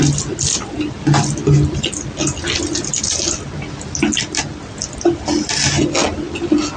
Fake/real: real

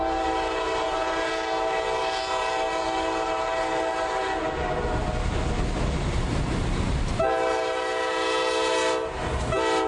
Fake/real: real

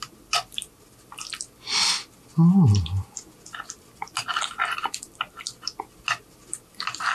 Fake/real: real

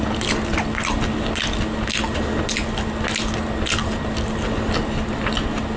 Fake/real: real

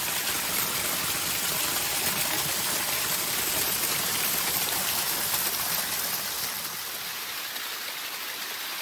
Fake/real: fake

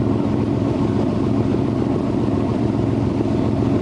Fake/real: fake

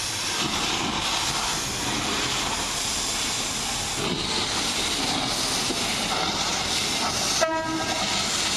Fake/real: real